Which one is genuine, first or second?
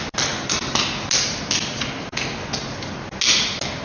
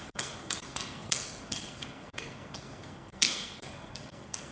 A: first